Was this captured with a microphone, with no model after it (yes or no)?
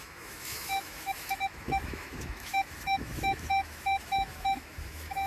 no